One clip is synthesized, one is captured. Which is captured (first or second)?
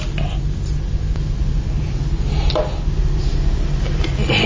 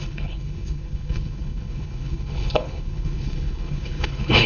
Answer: first